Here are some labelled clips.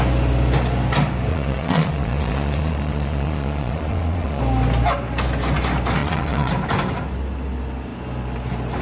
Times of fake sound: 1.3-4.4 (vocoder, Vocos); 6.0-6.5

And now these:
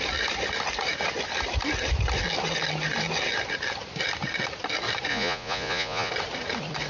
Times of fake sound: 5.1-6.1 (vocoder, Vocos)

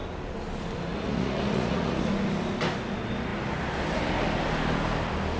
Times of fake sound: 0.9-2.1 (vocoder, Vocos)

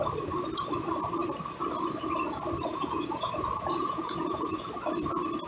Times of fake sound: 2.7-4.7 (vocoder, Vocos)

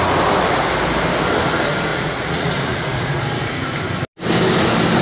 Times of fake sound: 1.9-3.2 (vocoder, Vocos)

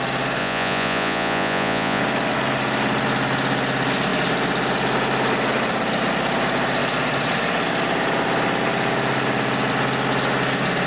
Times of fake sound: 0.4-2.0 (vocoder, Vocos)